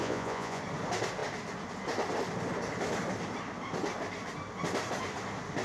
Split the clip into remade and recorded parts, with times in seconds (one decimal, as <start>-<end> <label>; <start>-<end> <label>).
0.0-0.6 remade; 0.6-5.6 recorded